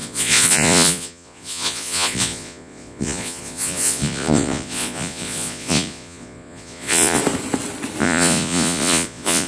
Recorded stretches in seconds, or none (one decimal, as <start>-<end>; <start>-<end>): 7.2-8.0